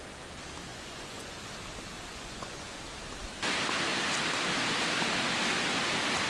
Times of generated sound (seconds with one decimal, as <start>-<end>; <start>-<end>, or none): 0.7-1.5; 2.1-2.8